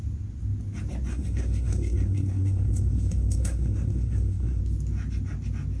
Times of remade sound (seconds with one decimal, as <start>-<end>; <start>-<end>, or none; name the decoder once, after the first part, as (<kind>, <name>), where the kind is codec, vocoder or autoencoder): 1.1-4.6 (codec, SNAC)